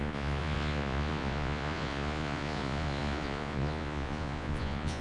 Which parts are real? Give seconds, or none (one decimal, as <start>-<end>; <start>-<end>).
none